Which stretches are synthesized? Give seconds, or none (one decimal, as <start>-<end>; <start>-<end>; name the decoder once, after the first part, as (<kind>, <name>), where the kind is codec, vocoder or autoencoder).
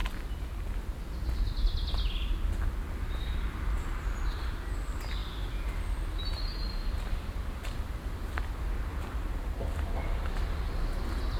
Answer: 6.6-7.9 (vocoder, BigVGAN v2); 8.9-9.4